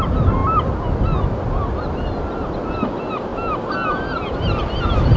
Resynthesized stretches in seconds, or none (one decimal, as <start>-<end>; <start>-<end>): none